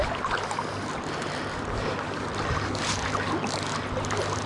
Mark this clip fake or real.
real